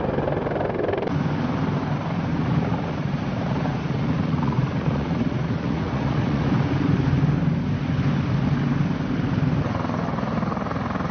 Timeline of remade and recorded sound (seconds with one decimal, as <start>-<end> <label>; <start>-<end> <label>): 0.0-2.3 recorded; 2.3-6.5 remade; 6.5-11.1 recorded